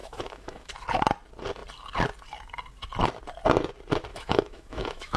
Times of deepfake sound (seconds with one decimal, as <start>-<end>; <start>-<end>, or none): 0.0-0.7; 4.1-5.2